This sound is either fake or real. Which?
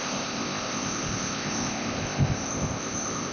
fake